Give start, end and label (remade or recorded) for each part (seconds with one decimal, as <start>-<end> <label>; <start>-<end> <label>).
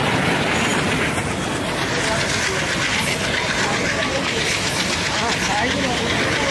0.0-6.5 recorded